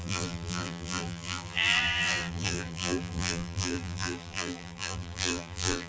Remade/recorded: remade